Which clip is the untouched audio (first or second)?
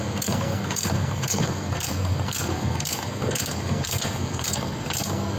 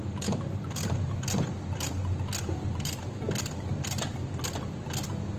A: second